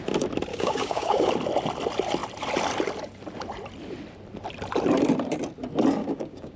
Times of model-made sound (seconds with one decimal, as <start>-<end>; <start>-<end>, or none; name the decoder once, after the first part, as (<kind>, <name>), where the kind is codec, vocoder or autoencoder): 0.5-1.3 (codec, DAC); 6.0-6.6